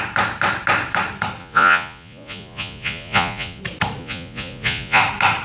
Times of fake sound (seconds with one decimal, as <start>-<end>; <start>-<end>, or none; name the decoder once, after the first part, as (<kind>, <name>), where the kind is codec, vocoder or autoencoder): 1.4-3.6 (vocoder, Vocos); 4.0-5.0